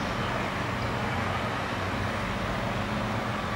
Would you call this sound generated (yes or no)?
no